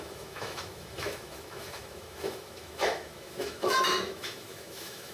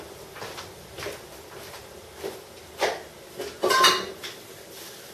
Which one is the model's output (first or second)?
first